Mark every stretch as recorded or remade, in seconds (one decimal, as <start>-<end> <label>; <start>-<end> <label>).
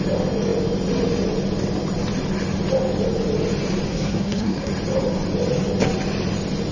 0.0-3.9 recorded; 3.9-4.7 remade; 4.7-6.7 recorded